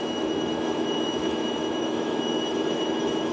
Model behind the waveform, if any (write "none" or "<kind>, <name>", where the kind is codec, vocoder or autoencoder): autoencoder, DAC-VAE